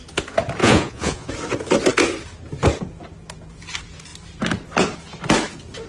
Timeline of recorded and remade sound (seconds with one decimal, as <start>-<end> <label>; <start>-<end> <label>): 0.0-0.6 recorded; 0.6-1.3 remade; 1.3-5.9 recorded